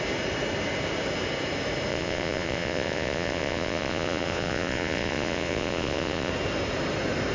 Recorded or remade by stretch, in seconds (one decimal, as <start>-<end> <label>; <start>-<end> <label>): 0.0-1.9 recorded; 1.9-6.3 remade; 6.3-7.3 recorded